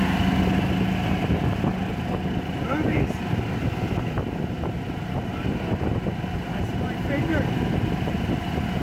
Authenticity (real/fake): real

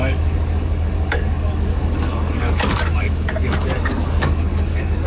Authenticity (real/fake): fake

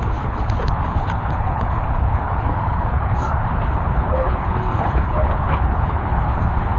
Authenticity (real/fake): fake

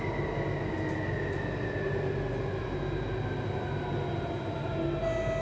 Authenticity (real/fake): real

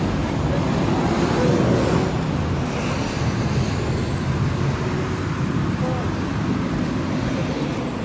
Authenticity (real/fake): real